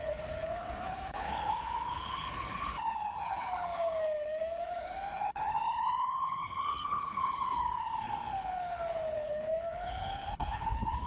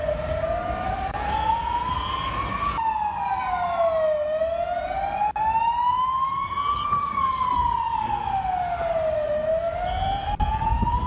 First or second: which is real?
second